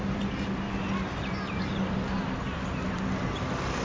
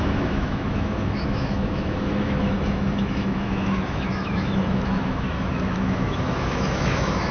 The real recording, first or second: first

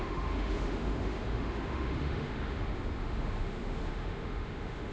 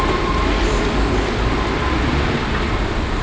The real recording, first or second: second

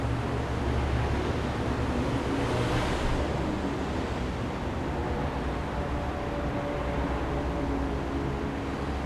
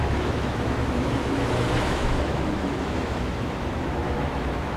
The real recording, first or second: first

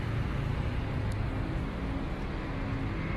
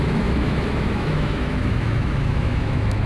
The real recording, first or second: first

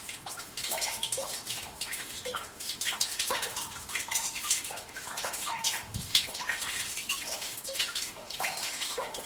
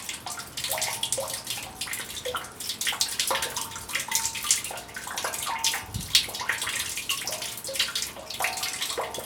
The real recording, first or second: second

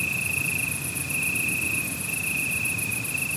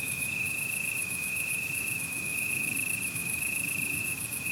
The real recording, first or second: first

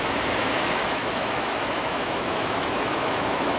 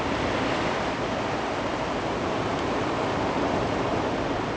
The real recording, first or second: second